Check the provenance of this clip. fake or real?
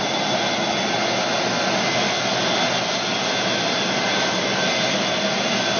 real